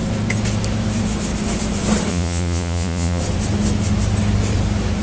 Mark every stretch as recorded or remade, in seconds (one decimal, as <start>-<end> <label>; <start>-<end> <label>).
0.0-2.1 recorded; 2.1-3.2 remade; 3.2-5.0 recorded